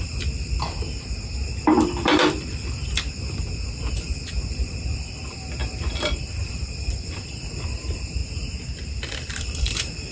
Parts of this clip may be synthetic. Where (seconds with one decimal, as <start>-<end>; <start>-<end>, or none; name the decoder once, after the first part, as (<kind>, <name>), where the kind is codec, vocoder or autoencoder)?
0.0-0.6 (vocoder, BigVGAN v2); 1.4-2.8; 4.5-8.2; 9.4-10.1